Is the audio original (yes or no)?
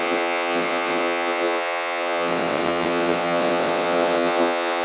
no